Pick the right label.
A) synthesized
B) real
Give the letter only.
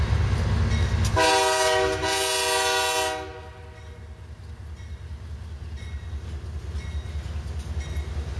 B